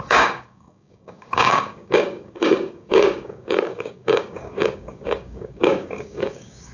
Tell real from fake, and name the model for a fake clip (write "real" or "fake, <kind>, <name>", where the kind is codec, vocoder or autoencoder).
fake, codec, DAC